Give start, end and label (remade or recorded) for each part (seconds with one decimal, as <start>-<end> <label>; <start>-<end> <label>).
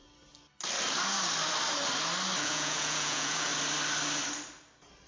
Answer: 0.0-2.4 recorded; 2.4-3.5 remade; 3.5-5.1 recorded